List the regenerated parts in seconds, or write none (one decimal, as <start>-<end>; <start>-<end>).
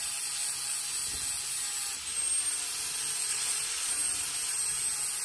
3.3-3.9